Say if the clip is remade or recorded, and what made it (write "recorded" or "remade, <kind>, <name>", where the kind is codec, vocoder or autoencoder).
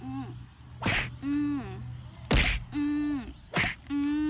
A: recorded